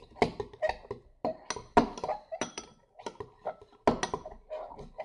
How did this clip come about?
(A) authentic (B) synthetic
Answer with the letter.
A